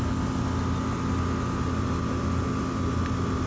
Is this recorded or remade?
recorded